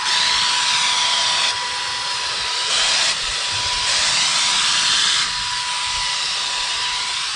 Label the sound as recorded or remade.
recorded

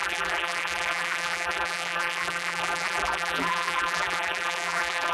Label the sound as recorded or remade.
remade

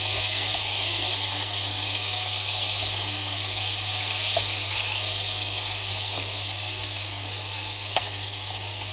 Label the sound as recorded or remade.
remade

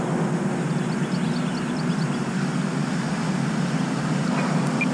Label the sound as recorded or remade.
recorded